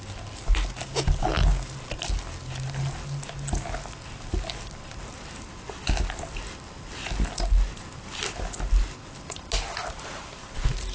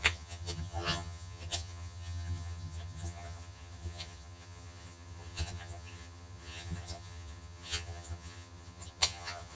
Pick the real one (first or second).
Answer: first